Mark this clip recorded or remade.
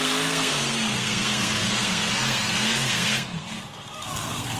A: remade